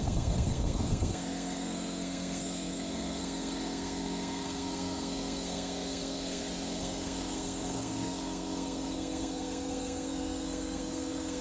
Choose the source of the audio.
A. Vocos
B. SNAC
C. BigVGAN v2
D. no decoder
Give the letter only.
B